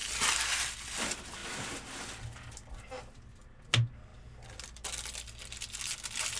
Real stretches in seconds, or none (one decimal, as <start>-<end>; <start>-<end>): 0.0-6.4